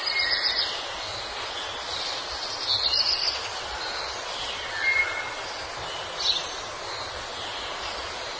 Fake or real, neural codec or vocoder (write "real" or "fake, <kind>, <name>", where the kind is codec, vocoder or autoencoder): real